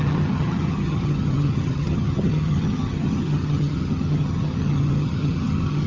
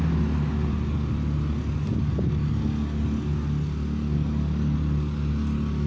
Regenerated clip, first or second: first